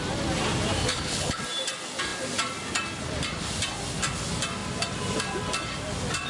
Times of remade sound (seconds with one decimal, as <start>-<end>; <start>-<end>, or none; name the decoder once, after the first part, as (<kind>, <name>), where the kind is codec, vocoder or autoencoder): 0.9-1.4 (codec, HILCodec)